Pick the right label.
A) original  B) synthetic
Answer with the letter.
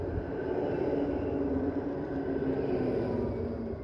A